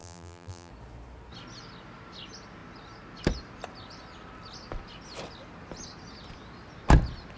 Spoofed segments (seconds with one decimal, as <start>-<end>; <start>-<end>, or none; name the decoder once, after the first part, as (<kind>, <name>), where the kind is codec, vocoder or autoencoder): 0.0-0.7 (vocoder, BigVGAN v2)

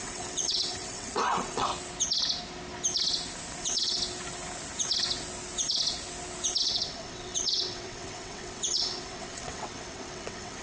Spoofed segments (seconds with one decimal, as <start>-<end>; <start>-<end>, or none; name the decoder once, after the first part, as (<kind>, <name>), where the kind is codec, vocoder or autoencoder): 0.0-1.7 (vocoder, WaveNeXt); 3.6-4.0; 6.6-10.6

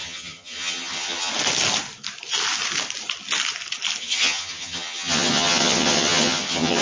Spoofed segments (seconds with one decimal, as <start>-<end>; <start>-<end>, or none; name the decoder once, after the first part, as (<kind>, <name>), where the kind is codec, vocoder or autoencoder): 0.0-1.3 (vocoder, HiFi-GAN); 4.0-6.8

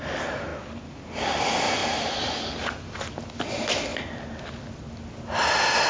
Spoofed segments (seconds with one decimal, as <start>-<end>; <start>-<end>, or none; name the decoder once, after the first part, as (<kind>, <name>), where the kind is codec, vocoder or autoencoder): none

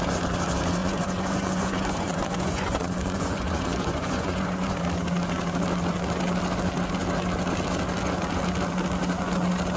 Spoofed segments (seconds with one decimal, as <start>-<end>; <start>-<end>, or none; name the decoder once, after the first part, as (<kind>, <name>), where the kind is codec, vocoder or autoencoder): 0.8-4.8 (vocoder, Vocos)